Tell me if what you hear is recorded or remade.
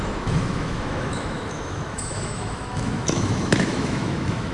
remade